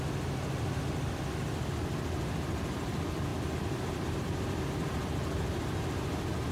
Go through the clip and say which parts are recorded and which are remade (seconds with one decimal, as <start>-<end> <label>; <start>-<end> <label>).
0.0-6.5 recorded